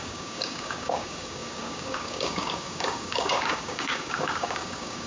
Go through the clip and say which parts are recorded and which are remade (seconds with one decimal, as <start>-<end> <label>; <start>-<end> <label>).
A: 0.0-5.1 remade